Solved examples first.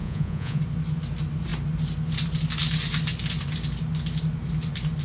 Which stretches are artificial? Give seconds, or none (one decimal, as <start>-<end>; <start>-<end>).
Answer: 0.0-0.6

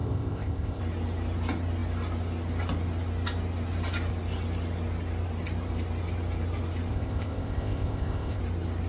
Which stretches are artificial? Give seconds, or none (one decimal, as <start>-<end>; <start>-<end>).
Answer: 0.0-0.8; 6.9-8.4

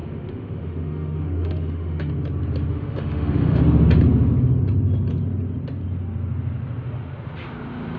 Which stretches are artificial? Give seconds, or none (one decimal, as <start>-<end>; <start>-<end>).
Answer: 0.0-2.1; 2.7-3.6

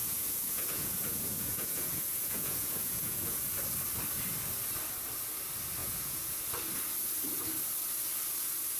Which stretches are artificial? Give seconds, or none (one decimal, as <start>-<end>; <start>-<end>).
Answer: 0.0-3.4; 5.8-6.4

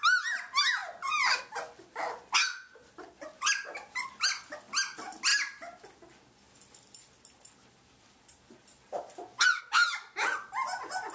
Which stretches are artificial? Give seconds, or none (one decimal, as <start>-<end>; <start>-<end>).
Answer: 0.8-1.4

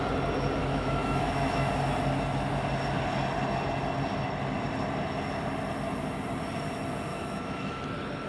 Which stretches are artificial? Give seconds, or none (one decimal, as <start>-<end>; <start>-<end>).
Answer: 0.6-1.7; 7.1-7.8

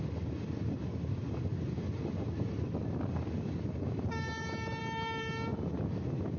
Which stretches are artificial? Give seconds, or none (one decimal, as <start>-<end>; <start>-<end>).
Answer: none

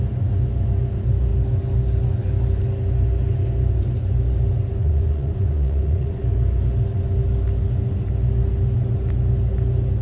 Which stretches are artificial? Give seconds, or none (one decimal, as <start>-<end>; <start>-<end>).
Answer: 4.8-6.2